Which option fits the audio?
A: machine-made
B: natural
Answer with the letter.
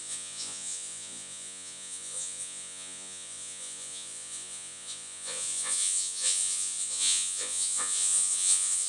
A